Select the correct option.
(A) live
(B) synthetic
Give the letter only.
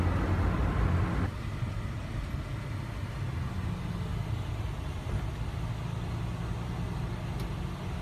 A